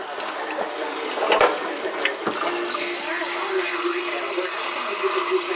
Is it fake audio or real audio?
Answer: real